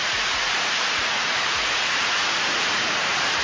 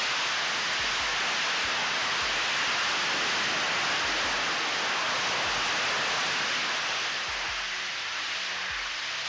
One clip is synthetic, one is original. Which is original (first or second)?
second